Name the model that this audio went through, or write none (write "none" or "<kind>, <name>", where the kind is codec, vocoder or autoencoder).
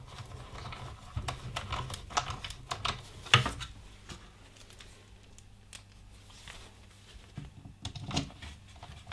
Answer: none